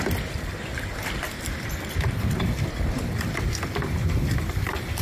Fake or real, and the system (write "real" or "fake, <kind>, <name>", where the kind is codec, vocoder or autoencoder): real